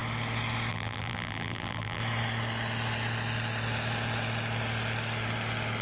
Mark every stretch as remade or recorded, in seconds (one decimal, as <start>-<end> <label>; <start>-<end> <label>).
0.0-0.7 recorded; 0.7-2.0 remade; 2.0-5.8 recorded